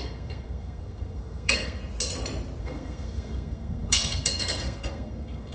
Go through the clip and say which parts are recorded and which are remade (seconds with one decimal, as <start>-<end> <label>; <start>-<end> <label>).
0.0-1.8 remade; 1.8-2.6 recorded; 2.6-5.5 remade